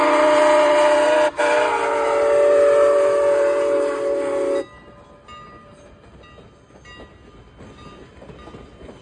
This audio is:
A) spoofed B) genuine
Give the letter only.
B